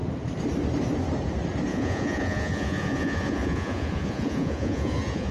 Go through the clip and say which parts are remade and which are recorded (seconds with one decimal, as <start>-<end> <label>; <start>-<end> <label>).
0.0-1.7 recorded; 1.7-5.3 remade